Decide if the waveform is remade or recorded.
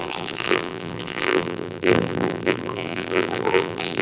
remade